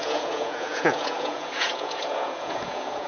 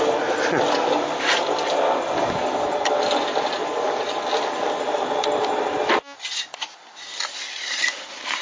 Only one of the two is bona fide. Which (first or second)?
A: second